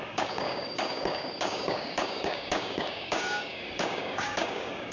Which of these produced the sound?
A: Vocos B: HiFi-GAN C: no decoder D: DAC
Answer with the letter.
D